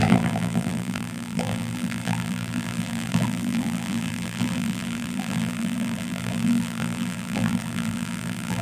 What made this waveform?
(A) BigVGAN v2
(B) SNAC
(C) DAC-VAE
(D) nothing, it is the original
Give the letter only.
A